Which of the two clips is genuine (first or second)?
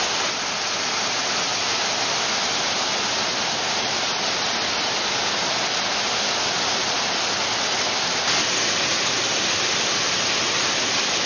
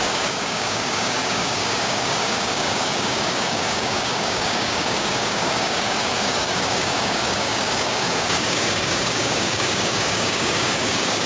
first